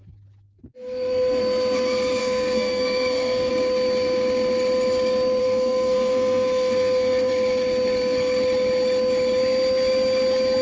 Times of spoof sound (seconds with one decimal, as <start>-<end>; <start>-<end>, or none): 0.7-1.4; 2.2-3.5; 5.4-7.3